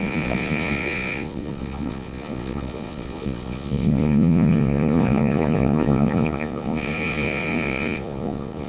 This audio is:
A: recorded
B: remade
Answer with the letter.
B